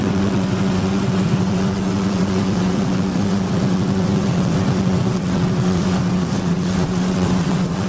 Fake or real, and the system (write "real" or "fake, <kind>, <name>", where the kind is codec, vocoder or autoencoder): fake, vocoder, WaveNeXt